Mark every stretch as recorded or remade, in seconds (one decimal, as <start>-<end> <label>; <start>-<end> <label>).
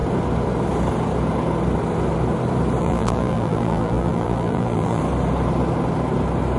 0.0-2.8 recorded; 2.8-5.0 remade; 5.0-6.6 recorded